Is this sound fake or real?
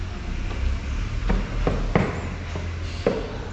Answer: real